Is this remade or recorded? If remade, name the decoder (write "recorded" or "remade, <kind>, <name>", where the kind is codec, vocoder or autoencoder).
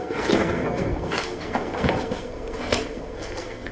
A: remade, codec, SNAC